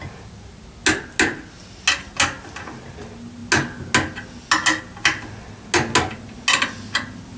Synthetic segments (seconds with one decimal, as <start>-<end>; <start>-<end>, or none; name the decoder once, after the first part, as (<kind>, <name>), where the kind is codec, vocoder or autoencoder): none